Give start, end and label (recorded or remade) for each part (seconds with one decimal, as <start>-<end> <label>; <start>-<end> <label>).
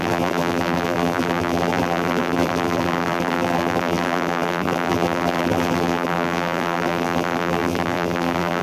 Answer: 0.0-8.6 remade